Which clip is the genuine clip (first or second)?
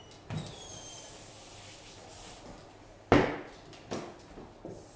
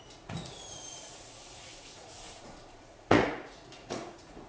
first